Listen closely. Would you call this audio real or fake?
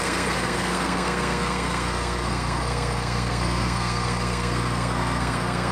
fake